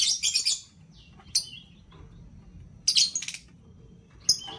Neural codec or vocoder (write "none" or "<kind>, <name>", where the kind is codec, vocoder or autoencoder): none